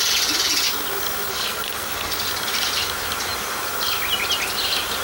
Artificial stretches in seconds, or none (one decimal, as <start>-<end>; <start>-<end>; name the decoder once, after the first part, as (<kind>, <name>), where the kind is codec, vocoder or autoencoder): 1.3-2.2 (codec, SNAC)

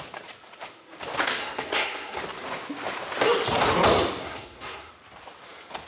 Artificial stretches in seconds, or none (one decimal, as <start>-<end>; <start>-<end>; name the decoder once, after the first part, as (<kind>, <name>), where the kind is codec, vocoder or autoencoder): 1.4-2.2 (codec, SNAC); 4.2-4.9

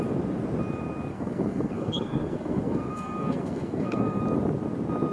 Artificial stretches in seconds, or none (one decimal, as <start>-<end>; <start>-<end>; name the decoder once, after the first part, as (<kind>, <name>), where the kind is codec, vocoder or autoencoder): 1.1-4.2 (codec, SNAC)